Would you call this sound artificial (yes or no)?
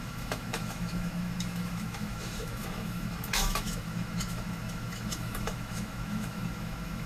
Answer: yes